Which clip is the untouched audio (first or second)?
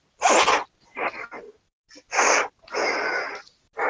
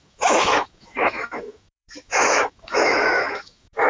first